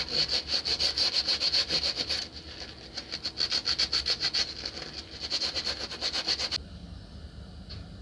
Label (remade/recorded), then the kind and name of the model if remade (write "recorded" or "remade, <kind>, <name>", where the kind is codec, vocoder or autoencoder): recorded